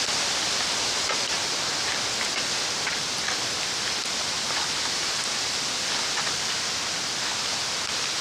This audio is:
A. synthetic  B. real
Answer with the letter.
B